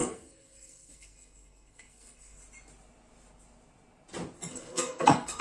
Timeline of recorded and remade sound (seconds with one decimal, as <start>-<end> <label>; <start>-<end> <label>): 0.0-2.4 remade; 2.4-4.5 recorded; 4.5-5.4 remade